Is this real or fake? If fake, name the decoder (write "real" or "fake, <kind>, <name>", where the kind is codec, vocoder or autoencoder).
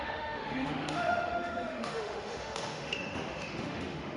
fake, autoencoder, DAC-VAE